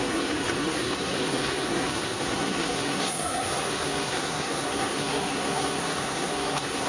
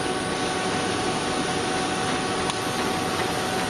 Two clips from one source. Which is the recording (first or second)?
second